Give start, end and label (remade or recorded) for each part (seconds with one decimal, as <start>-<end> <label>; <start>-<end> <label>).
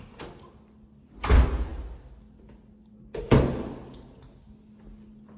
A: 0.0-5.4 recorded